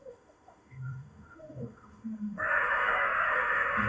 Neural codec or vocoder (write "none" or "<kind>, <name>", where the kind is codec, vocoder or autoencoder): autoencoder, DAC-VAE